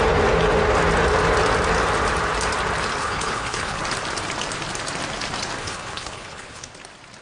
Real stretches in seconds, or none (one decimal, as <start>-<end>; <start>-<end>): 0.0-3.0; 3.8-5.6; 6.7-7.2